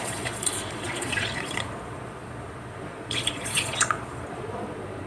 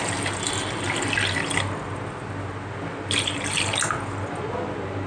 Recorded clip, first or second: second